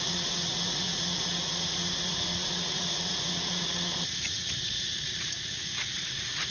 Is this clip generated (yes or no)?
yes